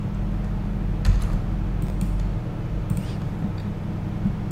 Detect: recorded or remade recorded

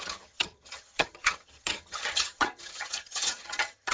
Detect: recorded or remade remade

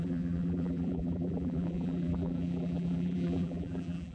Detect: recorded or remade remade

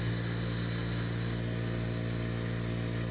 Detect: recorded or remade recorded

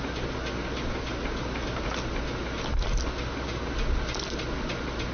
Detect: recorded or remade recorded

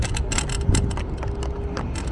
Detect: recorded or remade recorded